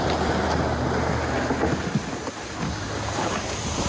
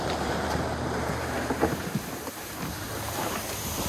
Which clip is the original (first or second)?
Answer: first